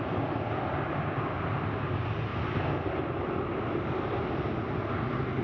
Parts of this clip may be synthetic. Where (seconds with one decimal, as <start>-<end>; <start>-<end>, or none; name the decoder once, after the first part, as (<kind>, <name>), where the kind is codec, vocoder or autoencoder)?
none